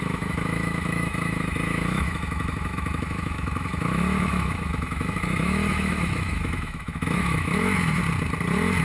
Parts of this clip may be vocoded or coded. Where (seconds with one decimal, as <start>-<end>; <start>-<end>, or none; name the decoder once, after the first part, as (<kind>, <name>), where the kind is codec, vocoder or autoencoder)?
0.0-8.0 (autoencoder, DAC-VAE)